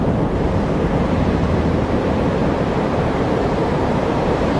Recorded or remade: remade